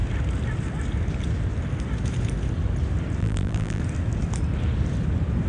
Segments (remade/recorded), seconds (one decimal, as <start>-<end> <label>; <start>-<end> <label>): 0.0-3.2 recorded; 3.2-3.8 remade; 3.8-5.5 recorded